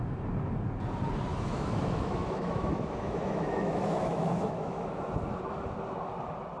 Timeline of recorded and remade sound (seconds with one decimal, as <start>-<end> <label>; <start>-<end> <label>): 0.0-1.3 recorded; 1.3-5.0 remade; 5.0-6.6 recorded